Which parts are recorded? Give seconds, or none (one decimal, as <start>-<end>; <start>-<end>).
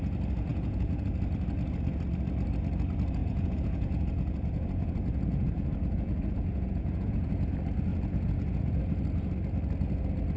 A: 0.0-0.5; 1.1-3.2; 7.5-7.9; 8.8-10.4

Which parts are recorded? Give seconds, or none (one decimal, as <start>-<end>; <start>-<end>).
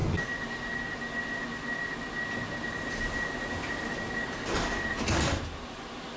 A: 0.0-6.2